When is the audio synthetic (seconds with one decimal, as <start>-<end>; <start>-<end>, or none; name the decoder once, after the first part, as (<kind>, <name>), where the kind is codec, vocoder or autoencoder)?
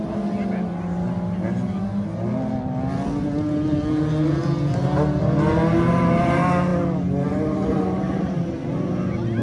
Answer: none